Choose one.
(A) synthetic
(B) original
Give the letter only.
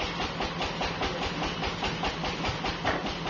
B